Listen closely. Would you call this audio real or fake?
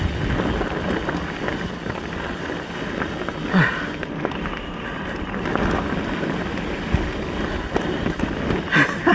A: real